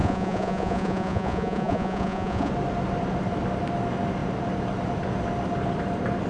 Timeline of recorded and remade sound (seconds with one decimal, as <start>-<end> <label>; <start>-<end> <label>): 0.0-2.5 remade; 2.5-6.3 recorded